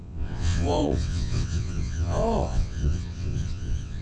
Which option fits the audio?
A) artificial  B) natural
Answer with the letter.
A